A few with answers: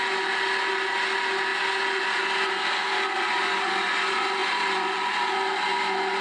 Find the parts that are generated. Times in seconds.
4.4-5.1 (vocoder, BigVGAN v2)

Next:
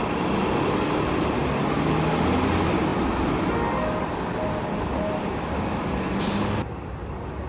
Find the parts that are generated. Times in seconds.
none

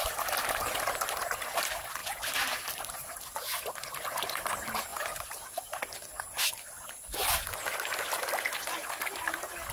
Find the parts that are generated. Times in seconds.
4.9-5.6 (vocoder, BigVGAN v2)

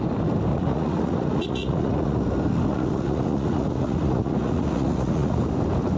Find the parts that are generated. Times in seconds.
0.5-2.2 (vocoder, Vocos); 2.7-5.4

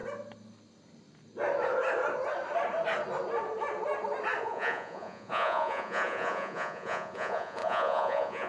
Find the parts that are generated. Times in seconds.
4.4-8.5 (vocoder, Vocos)

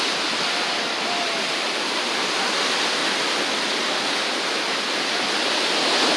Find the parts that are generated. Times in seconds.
none